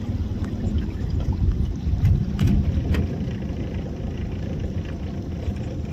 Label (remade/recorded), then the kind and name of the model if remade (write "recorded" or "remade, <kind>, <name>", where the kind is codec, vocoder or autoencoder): remade, vocoder, BigVGAN v2